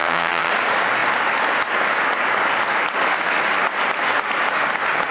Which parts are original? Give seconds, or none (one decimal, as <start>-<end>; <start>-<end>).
0.5-5.1